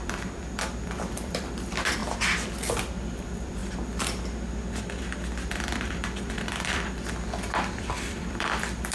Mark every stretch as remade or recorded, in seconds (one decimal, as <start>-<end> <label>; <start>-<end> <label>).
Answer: 0.0-2.0 remade; 2.0-3.2 recorded; 3.2-3.6 remade; 3.6-5.0 recorded; 5.0-8.9 remade